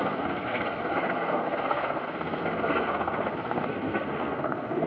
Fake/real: fake